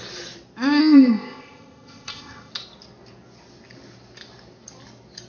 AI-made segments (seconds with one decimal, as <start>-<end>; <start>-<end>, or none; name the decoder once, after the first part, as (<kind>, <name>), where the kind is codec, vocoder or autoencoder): 0.8-2.5 (codec, ZipCodec)